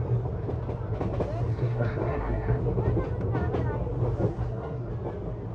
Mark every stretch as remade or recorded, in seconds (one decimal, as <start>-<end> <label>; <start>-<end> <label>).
0.0-1.5 recorded; 1.5-2.6 remade; 2.6-4.3 recorded; 4.3-4.9 remade; 4.9-5.5 recorded